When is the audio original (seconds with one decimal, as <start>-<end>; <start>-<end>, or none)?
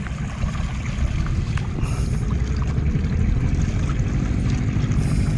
0.0-5.4